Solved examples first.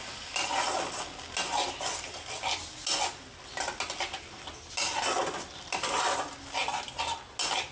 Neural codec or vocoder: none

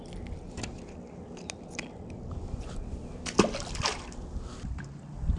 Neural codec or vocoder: none